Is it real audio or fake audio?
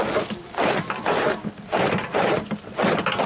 real